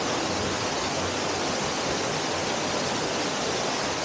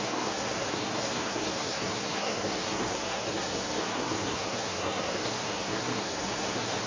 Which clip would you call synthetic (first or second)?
second